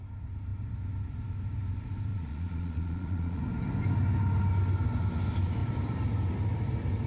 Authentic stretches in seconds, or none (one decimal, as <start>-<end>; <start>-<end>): 0.0-2.1; 3.4-7.1